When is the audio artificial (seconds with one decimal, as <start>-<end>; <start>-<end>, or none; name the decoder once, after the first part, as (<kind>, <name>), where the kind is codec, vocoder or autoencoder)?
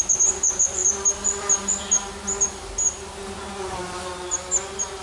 none